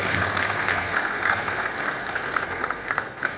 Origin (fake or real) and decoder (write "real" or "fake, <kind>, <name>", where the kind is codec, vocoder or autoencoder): fake, codec, SNAC